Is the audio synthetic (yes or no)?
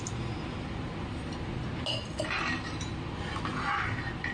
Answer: no